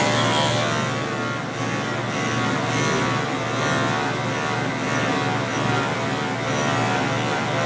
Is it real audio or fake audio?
real